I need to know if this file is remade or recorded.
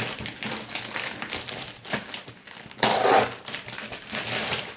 recorded